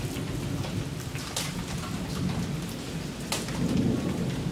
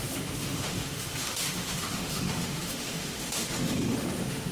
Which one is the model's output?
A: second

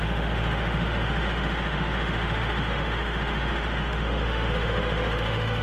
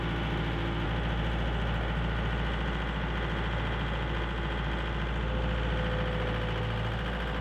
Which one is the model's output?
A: first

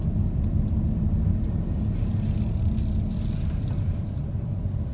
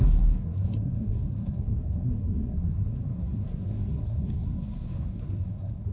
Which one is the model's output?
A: second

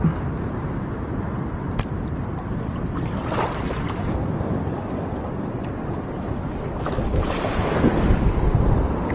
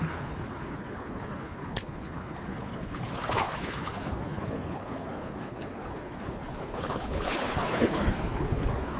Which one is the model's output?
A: second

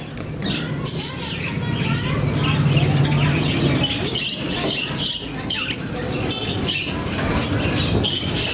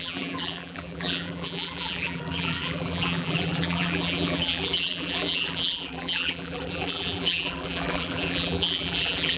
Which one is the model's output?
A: second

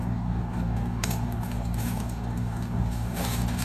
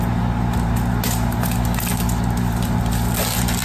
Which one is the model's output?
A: first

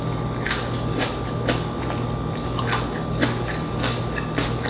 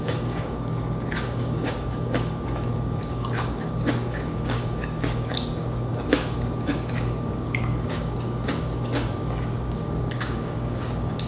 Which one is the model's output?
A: second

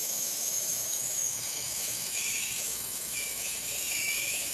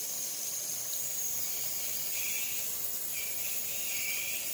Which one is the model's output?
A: first